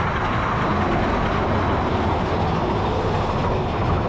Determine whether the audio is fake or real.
real